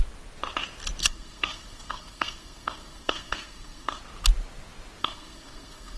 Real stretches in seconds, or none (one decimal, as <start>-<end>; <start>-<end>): 0.0-1.0; 4.0-5.0